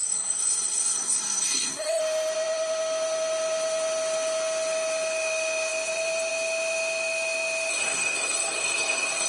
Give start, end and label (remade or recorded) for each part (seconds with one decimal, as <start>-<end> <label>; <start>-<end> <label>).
0.0-2.0 remade; 2.0-7.7 recorded; 7.7-9.3 remade